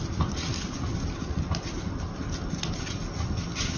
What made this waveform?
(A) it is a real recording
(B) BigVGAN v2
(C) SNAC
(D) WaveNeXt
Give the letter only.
A